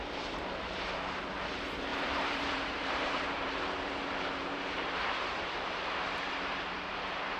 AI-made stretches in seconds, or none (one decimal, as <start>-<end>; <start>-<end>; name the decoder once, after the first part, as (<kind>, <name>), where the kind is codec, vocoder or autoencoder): 0.0-7.4 (vocoder, BigVGAN v2)